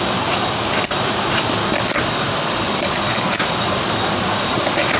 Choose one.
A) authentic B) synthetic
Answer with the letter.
A